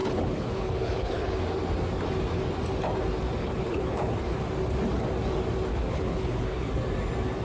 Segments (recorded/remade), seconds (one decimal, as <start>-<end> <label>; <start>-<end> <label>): 0.0-1.4 remade; 1.4-3.4 recorded; 3.4-4.4 remade; 4.4-5.7 recorded; 5.7-6.7 remade; 6.7-7.4 recorded